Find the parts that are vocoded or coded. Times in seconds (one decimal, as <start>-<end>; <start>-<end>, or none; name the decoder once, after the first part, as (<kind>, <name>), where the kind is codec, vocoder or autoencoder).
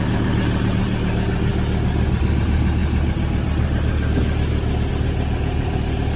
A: 0.0-1.5 (vocoder, BigVGAN v2); 2.4-2.8; 4.9-6.2